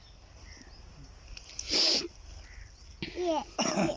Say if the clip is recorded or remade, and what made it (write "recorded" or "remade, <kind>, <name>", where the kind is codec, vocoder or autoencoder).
recorded